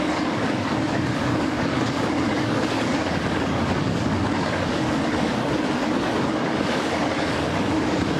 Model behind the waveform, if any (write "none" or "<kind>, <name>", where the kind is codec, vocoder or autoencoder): codec, DAC